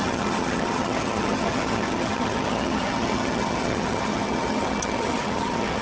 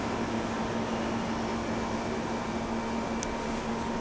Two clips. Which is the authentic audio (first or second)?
second